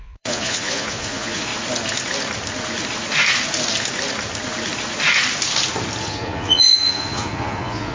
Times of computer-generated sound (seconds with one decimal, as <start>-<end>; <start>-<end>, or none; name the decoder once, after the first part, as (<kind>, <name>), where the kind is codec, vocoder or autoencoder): 0.0-1.5 (vocoder, Vocos); 6.0-7.9